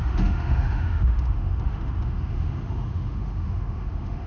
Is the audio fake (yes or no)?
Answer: yes